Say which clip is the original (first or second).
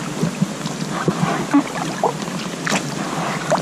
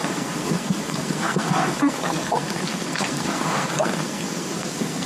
first